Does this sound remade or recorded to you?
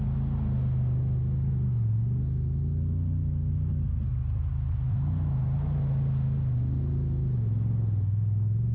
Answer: recorded